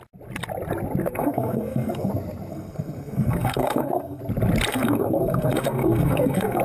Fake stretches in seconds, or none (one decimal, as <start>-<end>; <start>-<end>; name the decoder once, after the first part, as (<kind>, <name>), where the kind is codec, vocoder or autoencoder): 1.0-2.1 (codec, SNAC); 2.5-4.2; 4.7-6.6